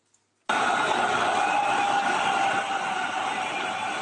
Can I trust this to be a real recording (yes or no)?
yes